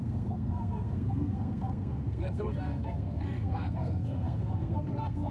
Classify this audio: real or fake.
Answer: fake